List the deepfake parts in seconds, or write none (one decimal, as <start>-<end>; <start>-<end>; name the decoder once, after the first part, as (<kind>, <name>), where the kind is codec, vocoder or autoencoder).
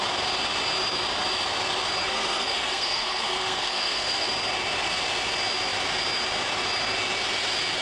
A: 2.0-4.3 (codec, SNAC)